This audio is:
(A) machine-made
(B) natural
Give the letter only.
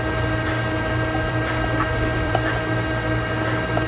A